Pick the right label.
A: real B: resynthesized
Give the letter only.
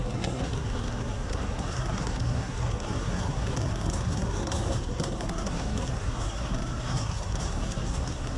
B